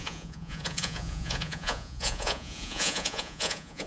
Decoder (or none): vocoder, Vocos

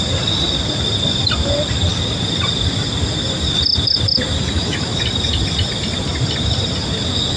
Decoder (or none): none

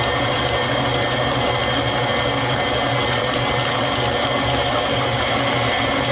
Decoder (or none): none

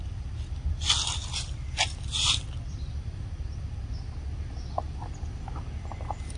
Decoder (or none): none